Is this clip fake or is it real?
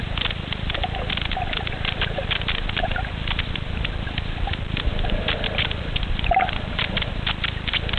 fake